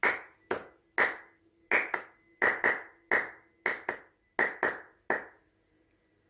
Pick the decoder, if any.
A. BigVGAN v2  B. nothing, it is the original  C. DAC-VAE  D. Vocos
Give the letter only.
B